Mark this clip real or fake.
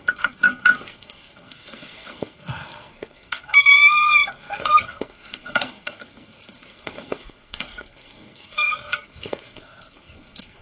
fake